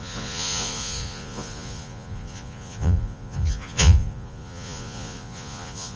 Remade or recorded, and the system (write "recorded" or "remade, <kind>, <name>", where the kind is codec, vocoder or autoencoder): remade, vocoder, Vocos